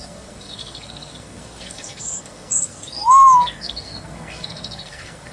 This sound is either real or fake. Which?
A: fake